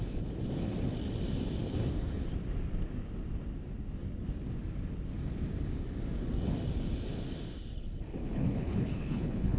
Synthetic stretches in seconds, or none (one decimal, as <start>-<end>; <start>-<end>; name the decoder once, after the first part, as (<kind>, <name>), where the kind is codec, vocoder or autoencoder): 8.2-9.6 (codec, HILCodec)